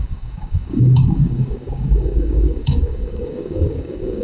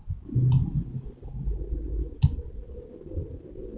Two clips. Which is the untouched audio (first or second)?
second